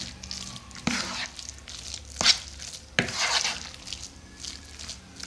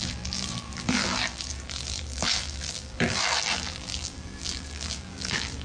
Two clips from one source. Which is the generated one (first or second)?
second